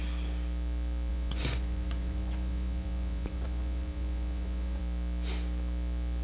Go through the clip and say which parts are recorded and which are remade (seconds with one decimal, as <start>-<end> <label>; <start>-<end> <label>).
0.0-1.1 recorded; 1.1-4.8 remade; 4.8-6.2 recorded